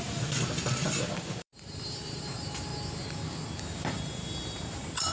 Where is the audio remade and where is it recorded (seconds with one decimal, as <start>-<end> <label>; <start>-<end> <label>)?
0.0-2.7 remade; 2.7-3.6 recorded; 3.6-5.1 remade